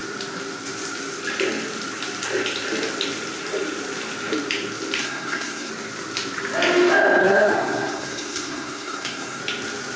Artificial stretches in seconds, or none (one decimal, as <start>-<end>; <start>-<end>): 5.0-5.7; 7.2-9.4

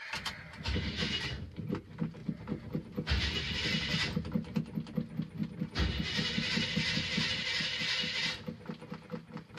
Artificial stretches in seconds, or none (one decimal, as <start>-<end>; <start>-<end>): none

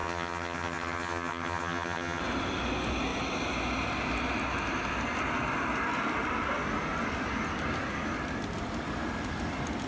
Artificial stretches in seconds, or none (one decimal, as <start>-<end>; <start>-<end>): 0.0-2.2

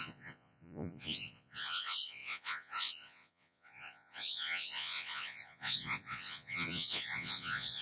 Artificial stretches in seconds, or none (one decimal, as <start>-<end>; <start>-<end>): 0.0-7.8

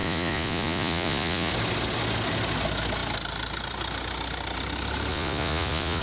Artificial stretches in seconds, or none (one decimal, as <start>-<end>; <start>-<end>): 0.0-1.5; 5.1-6.0

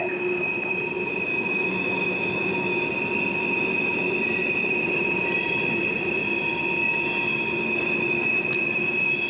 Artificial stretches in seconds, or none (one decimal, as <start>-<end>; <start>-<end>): 1.3-2.8